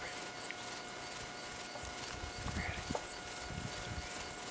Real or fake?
real